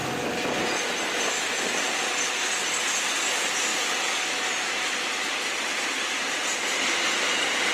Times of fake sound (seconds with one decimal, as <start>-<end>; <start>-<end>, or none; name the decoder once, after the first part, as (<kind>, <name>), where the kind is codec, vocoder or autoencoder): none